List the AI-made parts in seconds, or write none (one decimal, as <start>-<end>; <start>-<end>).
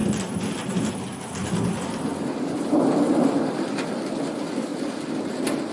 none